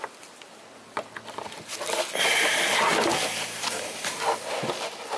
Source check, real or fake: real